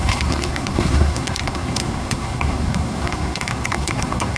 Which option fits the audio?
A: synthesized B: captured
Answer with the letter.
A